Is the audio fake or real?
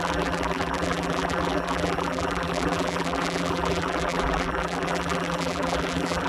fake